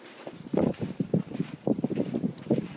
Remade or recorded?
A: recorded